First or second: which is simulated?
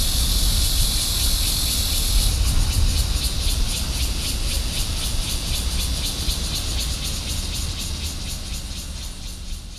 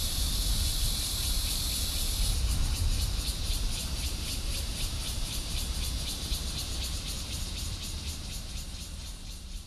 second